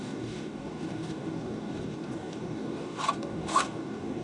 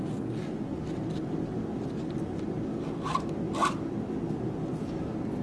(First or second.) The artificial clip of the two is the first